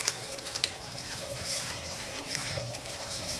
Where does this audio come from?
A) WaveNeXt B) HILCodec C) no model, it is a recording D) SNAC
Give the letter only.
D